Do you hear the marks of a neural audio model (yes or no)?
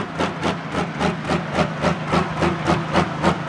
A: no